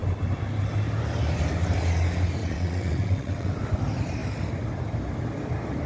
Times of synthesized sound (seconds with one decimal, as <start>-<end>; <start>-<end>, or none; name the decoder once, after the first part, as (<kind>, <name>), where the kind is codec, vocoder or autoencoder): 2.4-3.5 (vocoder, WaveNeXt)